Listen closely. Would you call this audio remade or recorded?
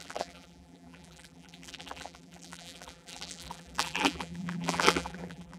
remade